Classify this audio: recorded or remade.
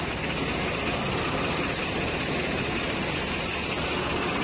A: recorded